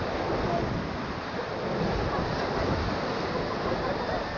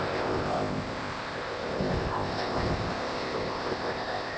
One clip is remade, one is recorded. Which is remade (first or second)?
second